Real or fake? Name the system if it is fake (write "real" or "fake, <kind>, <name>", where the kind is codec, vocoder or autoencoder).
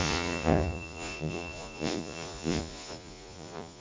fake, vocoder, Vocos